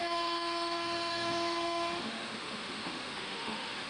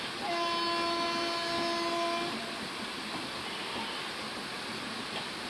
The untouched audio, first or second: second